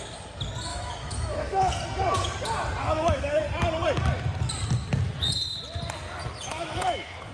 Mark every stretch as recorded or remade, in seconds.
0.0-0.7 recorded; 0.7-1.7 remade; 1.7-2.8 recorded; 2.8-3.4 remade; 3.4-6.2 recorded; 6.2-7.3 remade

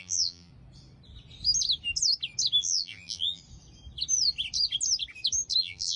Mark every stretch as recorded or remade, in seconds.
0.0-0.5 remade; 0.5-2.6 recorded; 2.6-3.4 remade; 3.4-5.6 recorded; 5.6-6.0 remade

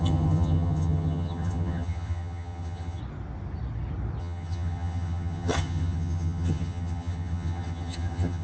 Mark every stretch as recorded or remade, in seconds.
0.0-3.0 remade; 3.0-4.2 recorded; 4.2-8.4 remade

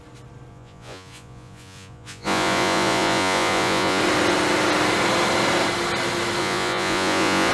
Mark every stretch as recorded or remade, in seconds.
0.0-0.5 recorded; 0.5-4.0 remade; 4.0-6.4 recorded; 6.4-7.5 remade